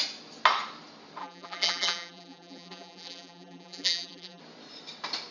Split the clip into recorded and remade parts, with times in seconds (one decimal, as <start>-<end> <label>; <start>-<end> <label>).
0.0-1.2 recorded; 1.2-4.4 remade; 4.4-5.3 recorded